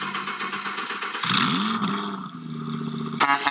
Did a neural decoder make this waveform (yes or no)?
no